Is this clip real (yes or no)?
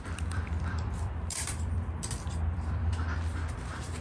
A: no